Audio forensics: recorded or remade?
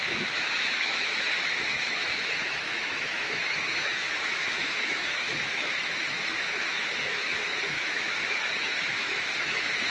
remade